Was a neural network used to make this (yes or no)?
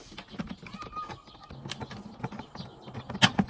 no